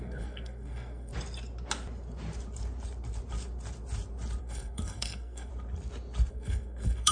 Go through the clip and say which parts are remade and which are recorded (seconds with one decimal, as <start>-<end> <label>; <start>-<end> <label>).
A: 0.0-1.1 remade; 1.1-4.4 recorded; 4.4-5.5 remade; 5.5-6.3 recorded; 6.3-7.1 remade